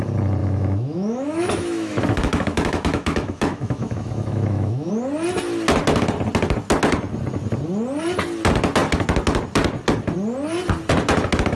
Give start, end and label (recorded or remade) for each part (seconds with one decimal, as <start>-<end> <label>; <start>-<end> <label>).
0.0-0.4 recorded; 0.4-4.9 remade; 4.9-11.6 recorded